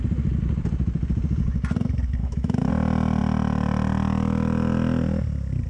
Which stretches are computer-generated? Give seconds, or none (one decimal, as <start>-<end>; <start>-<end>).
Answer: 2.2-2.7